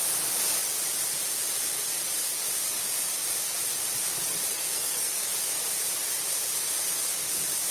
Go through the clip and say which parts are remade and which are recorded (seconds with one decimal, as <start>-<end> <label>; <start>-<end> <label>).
0.0-4.5 recorded; 4.5-5.3 remade; 5.3-7.7 recorded